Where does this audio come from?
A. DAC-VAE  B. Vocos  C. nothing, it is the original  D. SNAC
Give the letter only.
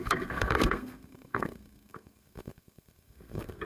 D